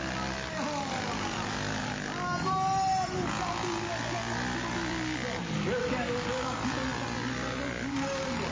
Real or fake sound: real